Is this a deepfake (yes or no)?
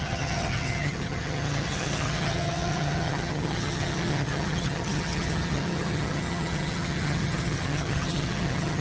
yes